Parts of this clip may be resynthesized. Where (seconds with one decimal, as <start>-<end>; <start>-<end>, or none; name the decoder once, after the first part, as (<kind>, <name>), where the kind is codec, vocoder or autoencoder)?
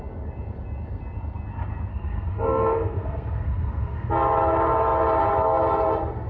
1.9-4.1 (codec, SNAC)